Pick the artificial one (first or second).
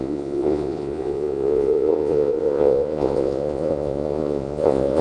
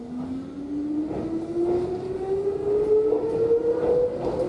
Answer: first